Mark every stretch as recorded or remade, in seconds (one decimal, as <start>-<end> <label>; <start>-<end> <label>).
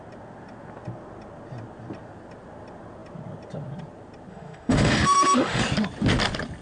0.0-4.3 recorded; 4.3-5.6 remade; 5.6-6.6 recorded